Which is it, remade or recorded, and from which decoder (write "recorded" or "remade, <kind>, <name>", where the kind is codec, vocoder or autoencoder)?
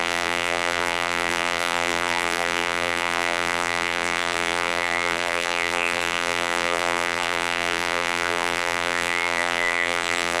remade, vocoder, BigVGAN v2